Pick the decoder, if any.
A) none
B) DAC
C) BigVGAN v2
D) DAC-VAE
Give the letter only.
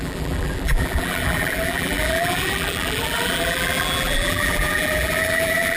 C